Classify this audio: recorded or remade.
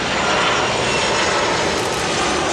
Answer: recorded